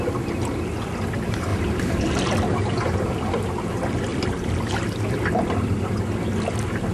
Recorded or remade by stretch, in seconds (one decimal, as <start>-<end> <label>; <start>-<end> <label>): 0.0-1.5 recorded; 1.5-2.0 remade; 2.0-4.1 recorded; 4.1-5.3 remade; 5.3-6.9 recorded